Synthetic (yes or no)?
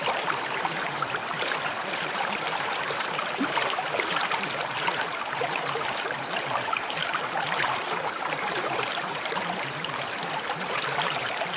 yes